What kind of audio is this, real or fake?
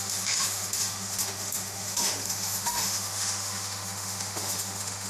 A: fake